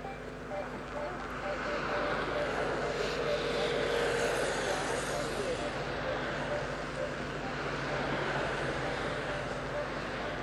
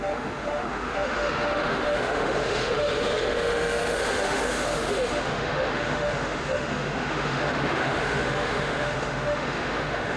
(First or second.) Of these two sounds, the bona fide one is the first